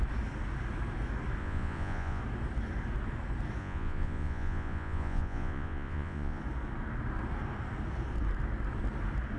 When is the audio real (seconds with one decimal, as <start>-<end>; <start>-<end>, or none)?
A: 0.0-1.4; 2.2-3.6; 6.4-9.4